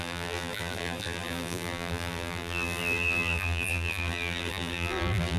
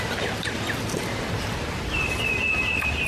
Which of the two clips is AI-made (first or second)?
first